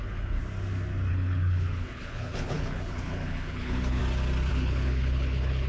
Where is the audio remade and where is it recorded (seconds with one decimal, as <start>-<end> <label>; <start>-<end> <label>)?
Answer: 0.0-0.4 remade; 0.4-1.1 recorded; 1.1-4.0 remade; 4.0-4.5 recorded; 4.5-5.7 remade